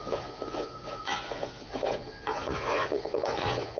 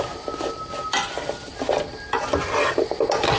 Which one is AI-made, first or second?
first